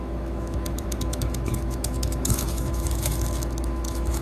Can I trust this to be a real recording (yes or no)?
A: no